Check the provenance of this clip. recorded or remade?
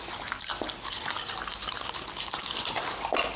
recorded